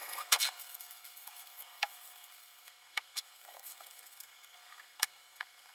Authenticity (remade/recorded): remade